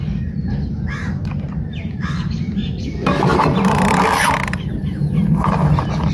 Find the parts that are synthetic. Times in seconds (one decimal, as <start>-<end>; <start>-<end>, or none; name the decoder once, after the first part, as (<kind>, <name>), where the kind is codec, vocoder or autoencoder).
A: none